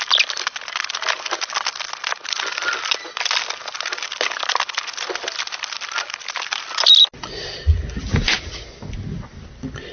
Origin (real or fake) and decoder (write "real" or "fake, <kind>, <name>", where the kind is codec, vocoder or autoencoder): real